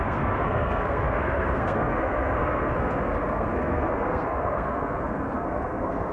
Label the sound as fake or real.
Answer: fake